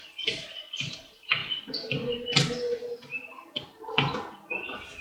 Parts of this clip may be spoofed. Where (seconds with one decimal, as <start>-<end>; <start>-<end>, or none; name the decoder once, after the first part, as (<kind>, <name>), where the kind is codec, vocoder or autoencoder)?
0.0-1.4 (vocoder, BigVGAN v2); 4.4-5.0